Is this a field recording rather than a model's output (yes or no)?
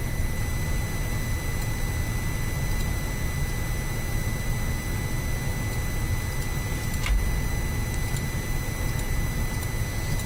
yes